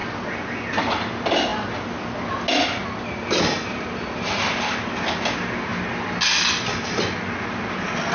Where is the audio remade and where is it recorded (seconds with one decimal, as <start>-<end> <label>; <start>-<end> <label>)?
0.0-8.1 recorded